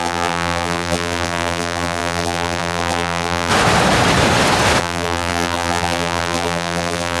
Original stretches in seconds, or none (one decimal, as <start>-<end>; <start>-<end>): 3.5-4.8